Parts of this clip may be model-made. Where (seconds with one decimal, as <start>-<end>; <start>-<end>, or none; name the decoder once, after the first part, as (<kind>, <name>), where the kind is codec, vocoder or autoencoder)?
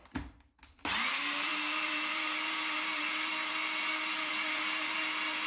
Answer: 1.1-5.5 (vocoder, BigVGAN v2)